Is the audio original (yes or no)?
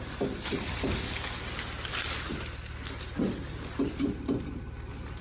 yes